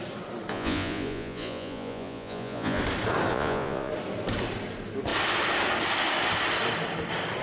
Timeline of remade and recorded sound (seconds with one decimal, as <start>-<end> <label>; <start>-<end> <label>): 0.0-0.5 recorded; 0.5-2.8 remade; 2.8-3.3 recorded; 3.3-3.9 remade; 3.9-7.4 recorded